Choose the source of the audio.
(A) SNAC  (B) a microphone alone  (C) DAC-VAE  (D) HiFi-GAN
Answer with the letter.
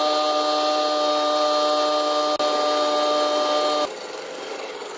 B